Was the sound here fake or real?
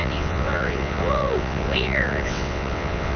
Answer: fake